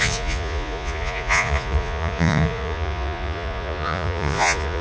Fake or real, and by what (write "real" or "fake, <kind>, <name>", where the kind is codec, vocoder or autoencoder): fake, vocoder, Vocos